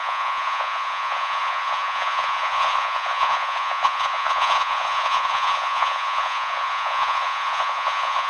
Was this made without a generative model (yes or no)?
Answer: no